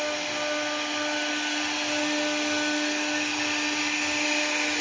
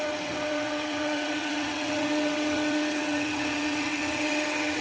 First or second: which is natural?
first